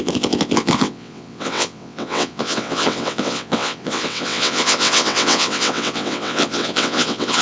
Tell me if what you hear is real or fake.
fake